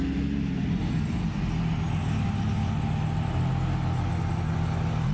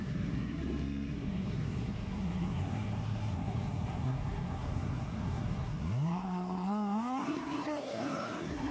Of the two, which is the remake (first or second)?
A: second